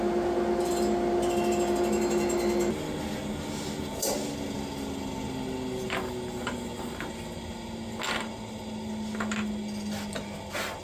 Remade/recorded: recorded